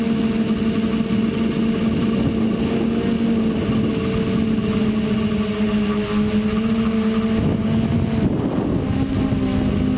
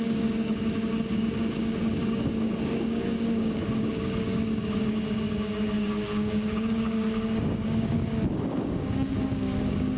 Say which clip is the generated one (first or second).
second